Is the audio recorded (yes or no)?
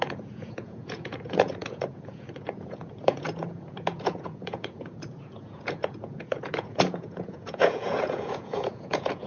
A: no